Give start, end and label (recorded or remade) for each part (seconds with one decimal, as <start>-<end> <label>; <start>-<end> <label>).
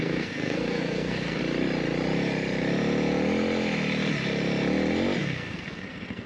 0.0-1.4 remade; 1.4-5.2 recorded; 5.2-6.3 remade